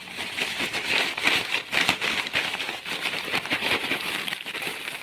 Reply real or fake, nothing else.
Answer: fake